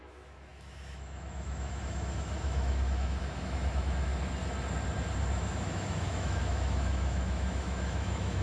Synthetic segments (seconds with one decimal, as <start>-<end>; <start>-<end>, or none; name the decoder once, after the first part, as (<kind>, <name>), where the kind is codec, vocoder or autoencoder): 0.0-4.1 (autoencoder, DAC-VAE); 5.3-8.4